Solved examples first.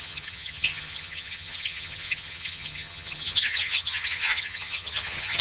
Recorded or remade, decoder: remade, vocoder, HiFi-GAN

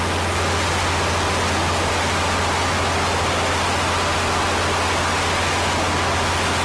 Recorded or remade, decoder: recorded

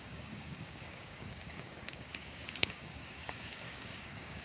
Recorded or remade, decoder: remade, codec, DAC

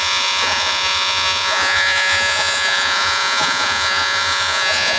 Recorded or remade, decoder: remade, vocoder, Vocos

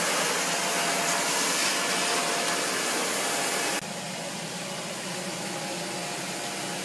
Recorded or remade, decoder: recorded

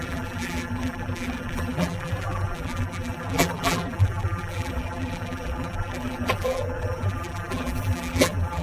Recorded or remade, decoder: remade, vocoder, BigVGAN v2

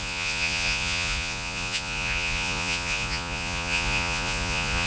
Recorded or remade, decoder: remade, vocoder, Vocos